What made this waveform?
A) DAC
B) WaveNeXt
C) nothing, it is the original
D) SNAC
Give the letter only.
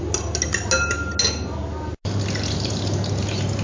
C